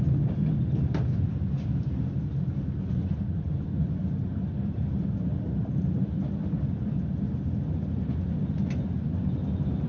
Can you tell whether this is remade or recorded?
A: recorded